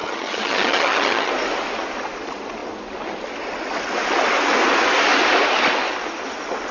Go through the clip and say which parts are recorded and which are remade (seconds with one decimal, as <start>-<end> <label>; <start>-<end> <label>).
0.0-1.3 remade; 1.3-6.7 recorded